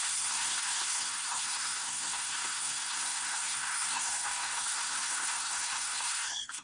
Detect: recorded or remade remade